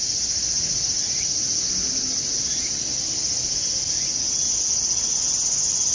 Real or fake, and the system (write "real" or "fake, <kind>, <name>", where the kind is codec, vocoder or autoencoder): real